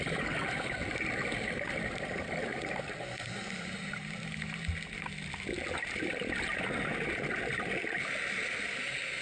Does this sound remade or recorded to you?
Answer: recorded